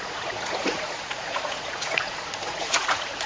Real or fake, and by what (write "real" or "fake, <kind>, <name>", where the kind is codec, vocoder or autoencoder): fake, vocoder, Vocos